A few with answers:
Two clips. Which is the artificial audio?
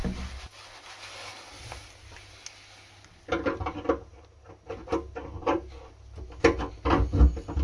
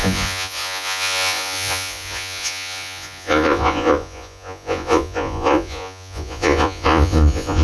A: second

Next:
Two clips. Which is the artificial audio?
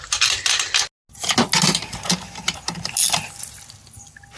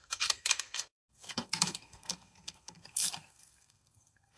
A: second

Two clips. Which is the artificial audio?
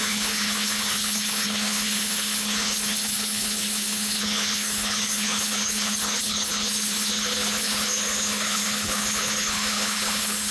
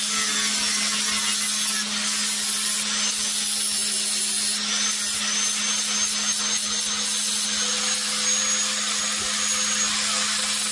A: first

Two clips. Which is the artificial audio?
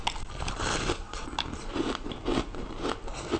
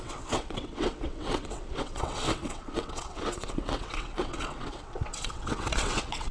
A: second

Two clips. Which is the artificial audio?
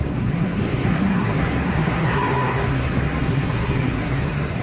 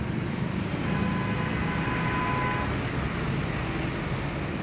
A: first